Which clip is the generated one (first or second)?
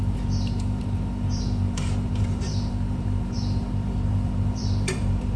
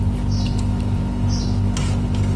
first